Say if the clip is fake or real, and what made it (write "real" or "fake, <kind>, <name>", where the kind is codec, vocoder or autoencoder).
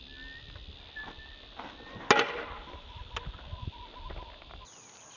real